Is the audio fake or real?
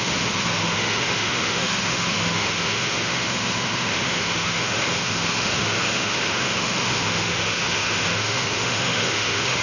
fake